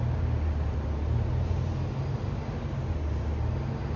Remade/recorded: recorded